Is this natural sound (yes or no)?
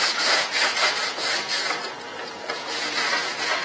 no